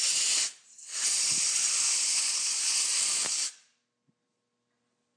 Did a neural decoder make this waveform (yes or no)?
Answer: no